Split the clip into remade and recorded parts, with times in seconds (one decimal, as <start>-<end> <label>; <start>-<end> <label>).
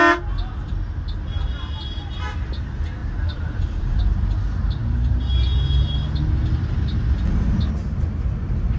0.0-3.0 recorded; 3.0-4.0 remade; 4.0-4.8 recorded; 4.8-5.4 remade; 5.4-8.8 recorded